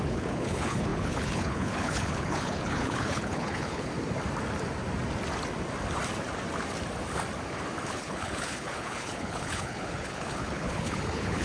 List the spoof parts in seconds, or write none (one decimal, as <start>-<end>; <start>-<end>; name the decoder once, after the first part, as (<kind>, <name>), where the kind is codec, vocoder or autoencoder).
0.0-3.9 (codec, HILCodec); 7.9-11.4